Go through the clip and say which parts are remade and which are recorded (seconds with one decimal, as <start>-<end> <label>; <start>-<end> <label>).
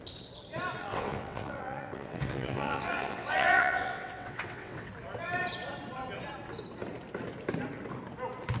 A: 0.0-0.8 recorded; 0.8-4.9 remade; 4.9-8.6 recorded